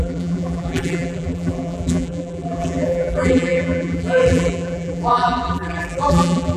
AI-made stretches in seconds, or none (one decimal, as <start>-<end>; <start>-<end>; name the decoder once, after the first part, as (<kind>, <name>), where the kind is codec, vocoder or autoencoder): 0.0-6.6 (vocoder, BigVGAN v2)